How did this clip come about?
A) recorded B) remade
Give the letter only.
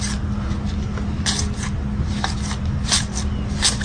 A